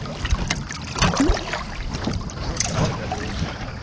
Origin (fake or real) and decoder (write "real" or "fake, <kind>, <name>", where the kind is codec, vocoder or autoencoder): real